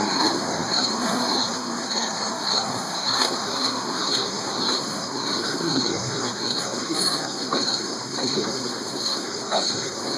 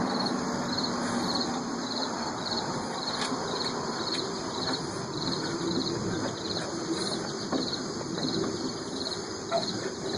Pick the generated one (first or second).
first